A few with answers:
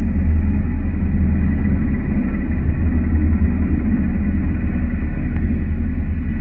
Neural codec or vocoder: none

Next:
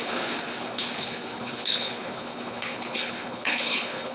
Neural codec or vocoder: codec, HILCodec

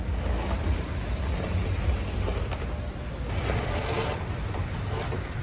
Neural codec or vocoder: none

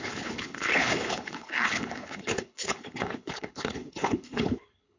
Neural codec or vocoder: codec, HILCodec